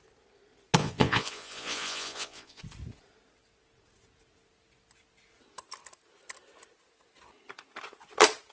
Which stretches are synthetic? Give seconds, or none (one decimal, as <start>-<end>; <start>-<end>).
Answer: 0.8-2.6